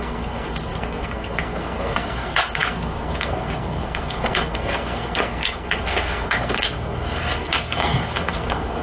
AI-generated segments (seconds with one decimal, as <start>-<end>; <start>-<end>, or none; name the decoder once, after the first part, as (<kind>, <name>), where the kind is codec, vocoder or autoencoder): 0.0-8.8 (codec, SNAC)